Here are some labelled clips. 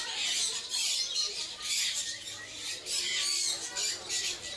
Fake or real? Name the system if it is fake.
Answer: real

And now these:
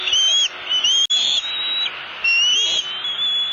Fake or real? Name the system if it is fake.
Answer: real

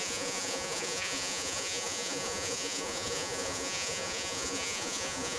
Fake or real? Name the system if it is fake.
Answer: fake, vocoder, Vocos